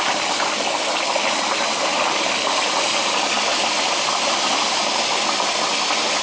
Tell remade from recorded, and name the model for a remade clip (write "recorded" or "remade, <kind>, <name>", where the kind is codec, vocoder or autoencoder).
recorded